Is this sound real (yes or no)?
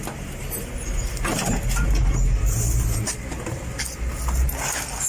yes